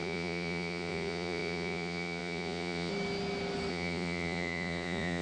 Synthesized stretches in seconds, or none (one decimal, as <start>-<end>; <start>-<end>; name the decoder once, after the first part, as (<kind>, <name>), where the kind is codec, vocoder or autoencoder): 0.0-2.9 (vocoder, Vocos); 3.7-5.2